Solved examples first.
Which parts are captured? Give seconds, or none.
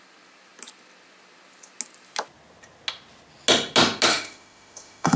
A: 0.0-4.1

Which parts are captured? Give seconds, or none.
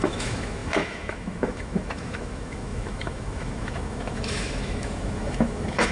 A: none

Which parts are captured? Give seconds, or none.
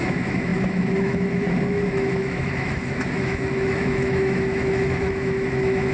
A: none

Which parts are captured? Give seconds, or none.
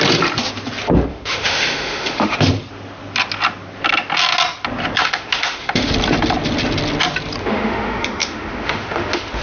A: 0.0-1.1; 2.5-5.0; 5.9-7.4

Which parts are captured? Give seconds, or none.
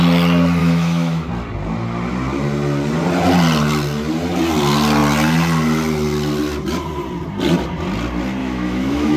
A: 0.0-0.6; 1.3-8.4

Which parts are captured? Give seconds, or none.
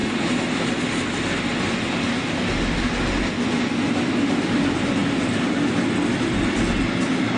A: 0.0-7.4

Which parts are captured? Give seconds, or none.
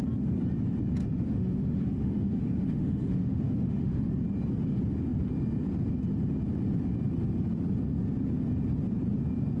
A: 0.0-1.0; 4.1-9.6